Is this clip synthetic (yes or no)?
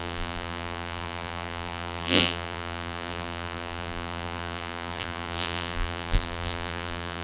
yes